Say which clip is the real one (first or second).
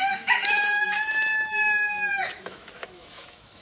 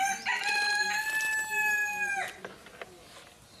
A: second